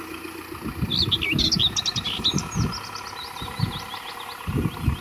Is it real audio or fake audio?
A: real